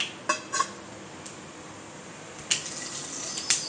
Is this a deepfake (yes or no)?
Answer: no